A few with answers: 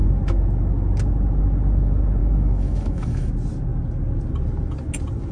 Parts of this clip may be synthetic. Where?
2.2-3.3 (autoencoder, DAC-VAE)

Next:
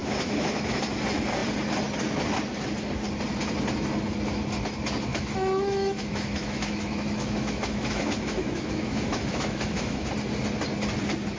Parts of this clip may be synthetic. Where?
0.0-0.8 (autoencoder, DAC-VAE); 5.1-10.1

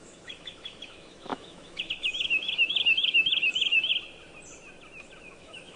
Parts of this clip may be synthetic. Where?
0.0-3.9 (autoencoder, DAC-VAE); 5.2-5.8

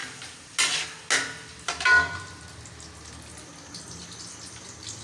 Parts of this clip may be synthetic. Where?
none

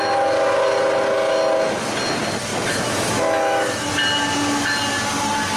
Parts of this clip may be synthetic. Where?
2.5-3.9 (autoencoder, DAC-VAE)

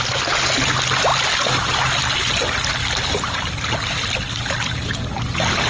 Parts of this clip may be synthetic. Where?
none